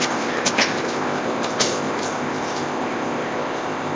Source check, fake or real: fake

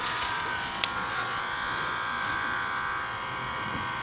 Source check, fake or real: fake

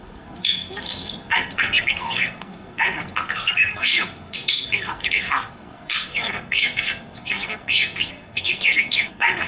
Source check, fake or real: fake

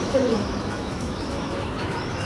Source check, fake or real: fake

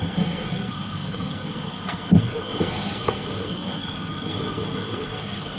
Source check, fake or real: fake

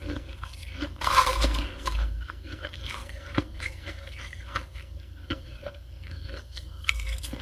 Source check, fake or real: fake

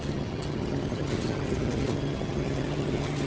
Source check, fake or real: fake